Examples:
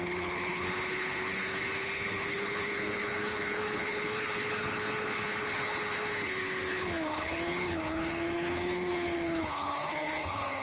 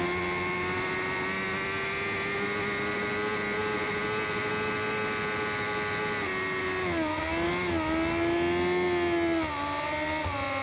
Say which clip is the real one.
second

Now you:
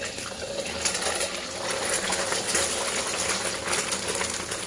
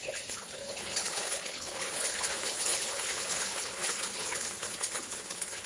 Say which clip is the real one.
first